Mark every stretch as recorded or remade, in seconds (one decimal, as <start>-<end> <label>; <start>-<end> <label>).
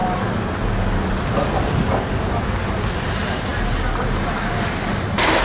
0.0-5.4 recorded